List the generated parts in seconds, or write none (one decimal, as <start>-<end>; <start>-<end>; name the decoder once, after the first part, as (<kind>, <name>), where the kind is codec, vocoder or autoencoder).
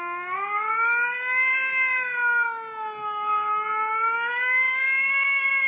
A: 4.3-5.7 (autoencoder, DAC-VAE)